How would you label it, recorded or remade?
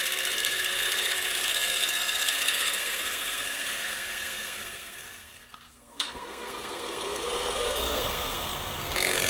remade